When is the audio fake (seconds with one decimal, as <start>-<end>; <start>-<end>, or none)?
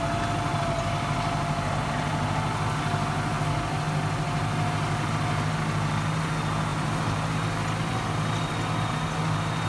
none